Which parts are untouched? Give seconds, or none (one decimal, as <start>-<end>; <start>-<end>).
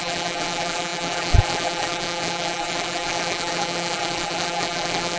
none